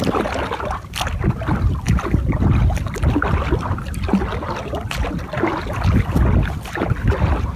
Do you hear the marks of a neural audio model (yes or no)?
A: no